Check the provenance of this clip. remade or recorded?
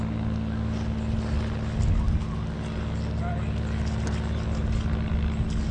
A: recorded